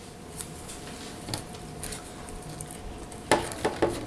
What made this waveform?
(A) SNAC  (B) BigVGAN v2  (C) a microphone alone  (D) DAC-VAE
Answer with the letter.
C